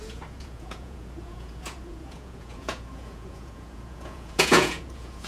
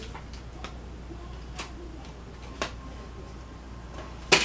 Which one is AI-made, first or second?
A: first